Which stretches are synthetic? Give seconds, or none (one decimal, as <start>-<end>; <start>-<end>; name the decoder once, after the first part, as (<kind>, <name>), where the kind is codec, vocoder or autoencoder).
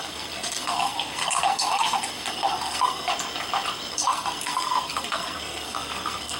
0.0-3.1 (codec, SNAC); 3.9-6.4